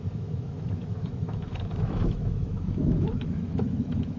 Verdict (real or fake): fake